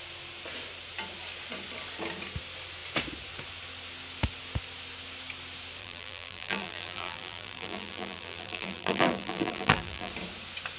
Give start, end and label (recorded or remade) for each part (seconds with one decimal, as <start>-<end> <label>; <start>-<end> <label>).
0.0-5.8 recorded; 5.8-10.1 remade; 10.1-10.8 recorded